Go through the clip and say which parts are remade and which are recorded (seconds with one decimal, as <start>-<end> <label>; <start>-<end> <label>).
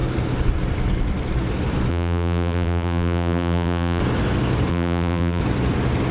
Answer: 0.0-1.9 recorded; 1.9-4.0 remade; 4.0-4.7 recorded; 4.7-5.4 remade; 5.4-6.1 recorded